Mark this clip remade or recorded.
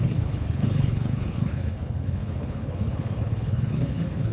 remade